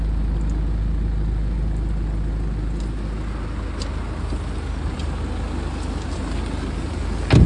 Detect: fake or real real